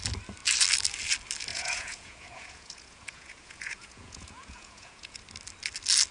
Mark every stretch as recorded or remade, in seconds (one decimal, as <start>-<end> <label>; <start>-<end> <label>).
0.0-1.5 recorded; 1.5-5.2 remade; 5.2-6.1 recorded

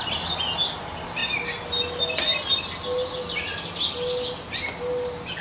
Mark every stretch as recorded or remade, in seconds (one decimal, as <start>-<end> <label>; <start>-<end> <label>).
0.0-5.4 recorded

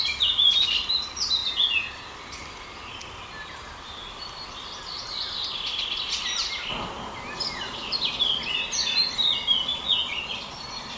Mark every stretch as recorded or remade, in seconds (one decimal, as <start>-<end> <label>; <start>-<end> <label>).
0.0-9.7 recorded; 9.7-10.6 remade; 10.6-11.0 recorded

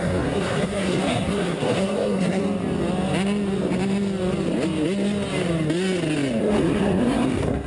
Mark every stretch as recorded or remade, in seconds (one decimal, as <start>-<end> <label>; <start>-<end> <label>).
0.0-2.4 remade; 2.4-6.4 recorded; 6.4-7.7 remade

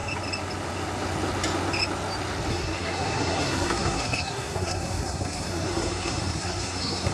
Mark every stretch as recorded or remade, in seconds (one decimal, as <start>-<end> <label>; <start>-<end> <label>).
0.0-2.5 recorded; 2.5-7.1 remade